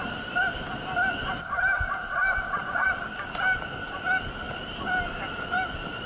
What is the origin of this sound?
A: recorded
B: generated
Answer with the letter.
A